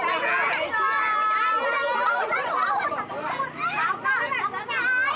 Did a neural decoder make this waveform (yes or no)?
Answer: no